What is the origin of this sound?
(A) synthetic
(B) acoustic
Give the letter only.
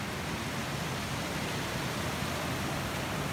B